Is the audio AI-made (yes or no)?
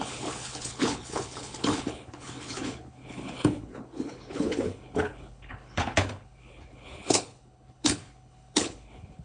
yes